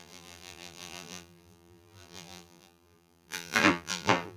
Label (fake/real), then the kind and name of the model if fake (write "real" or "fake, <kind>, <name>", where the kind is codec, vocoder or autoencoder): fake, vocoder, BigVGAN v2